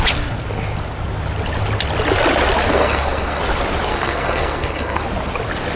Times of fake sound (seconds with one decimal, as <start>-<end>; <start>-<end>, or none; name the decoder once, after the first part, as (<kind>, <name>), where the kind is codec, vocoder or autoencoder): 2.7-3.4 (codec, SNAC); 3.9-5.0